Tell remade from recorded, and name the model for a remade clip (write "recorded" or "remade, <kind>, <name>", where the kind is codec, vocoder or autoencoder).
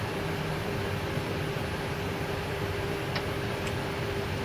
recorded